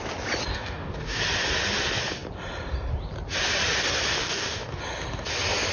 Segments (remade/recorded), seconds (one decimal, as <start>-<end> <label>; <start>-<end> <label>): 0.0-0.5 recorded; 0.5-1.2 remade; 1.2-4.2 recorded; 4.2-4.8 remade; 4.8-5.7 recorded